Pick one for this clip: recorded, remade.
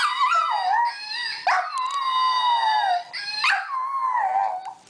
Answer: recorded